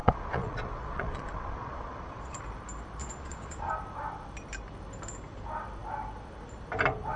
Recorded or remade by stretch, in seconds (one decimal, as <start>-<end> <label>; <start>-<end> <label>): 0.0-2.4 remade; 2.4-3.0 recorded; 3.0-3.7 remade; 3.7-7.2 recorded